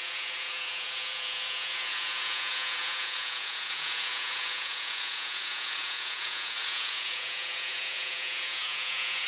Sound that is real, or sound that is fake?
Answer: fake